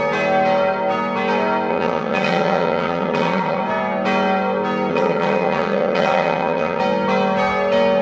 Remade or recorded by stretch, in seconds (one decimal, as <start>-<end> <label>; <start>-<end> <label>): 0.0-1.7 recorded; 1.7-3.6 remade; 3.6-4.9 recorded; 4.9-6.8 remade; 6.8-8.0 recorded